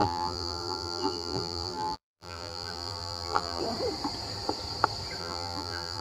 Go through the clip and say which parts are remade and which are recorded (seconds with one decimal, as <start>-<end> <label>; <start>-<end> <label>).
0.0-3.6 remade; 3.6-5.2 recorded; 5.2-6.0 remade